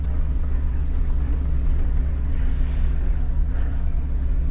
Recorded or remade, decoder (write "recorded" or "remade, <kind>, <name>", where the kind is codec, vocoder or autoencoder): remade, vocoder, WaveNeXt